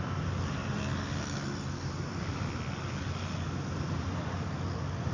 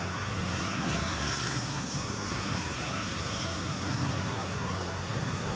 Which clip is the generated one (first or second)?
second